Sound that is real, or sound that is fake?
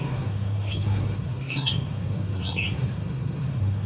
fake